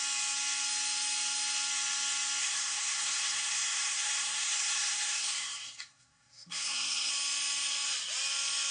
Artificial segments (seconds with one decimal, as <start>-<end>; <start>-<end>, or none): 2.4-7.1